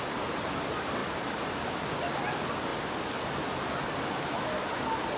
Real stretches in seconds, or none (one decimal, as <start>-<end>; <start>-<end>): 0.0-5.2